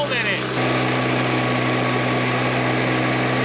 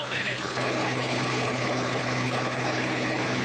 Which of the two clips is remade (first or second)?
second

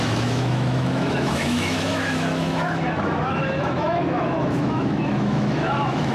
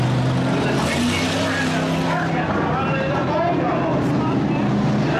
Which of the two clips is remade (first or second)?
first